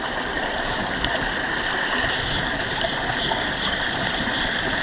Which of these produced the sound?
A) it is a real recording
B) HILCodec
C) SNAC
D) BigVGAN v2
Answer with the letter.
A